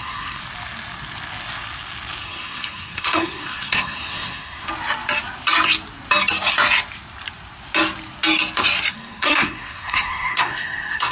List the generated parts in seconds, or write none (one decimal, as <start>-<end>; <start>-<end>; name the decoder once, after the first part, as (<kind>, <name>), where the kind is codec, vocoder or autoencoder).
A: 0.0-0.4 (codec, SNAC); 2.2-4.7; 8.9-11.1